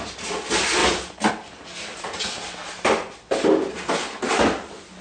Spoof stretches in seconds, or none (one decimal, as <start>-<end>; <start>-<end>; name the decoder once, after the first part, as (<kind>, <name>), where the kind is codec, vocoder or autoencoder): none